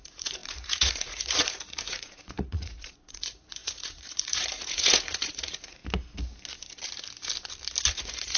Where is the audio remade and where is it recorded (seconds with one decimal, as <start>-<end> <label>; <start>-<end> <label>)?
0.0-5.8 remade; 5.8-7.9 recorded; 7.9-8.4 remade